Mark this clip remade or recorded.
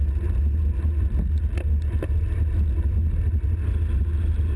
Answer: recorded